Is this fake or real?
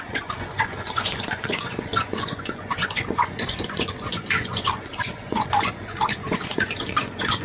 fake